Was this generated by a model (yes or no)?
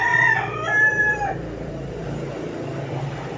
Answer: yes